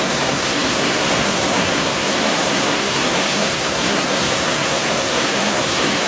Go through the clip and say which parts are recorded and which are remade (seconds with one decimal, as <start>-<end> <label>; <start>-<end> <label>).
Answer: 0.0-6.1 remade